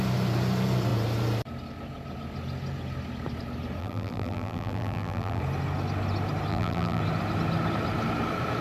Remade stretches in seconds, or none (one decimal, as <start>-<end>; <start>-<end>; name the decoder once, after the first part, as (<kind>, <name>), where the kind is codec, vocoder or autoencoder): 3.8-5.4 (vocoder, BigVGAN v2); 6.5-7.0